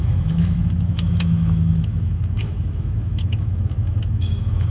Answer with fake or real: fake